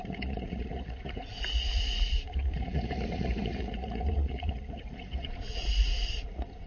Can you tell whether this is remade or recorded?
remade